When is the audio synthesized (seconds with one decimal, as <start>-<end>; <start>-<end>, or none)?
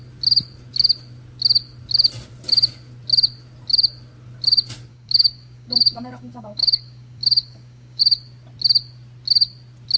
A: 4.9-8.0